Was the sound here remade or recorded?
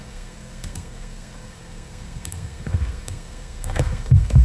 remade